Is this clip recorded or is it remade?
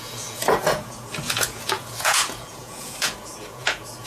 remade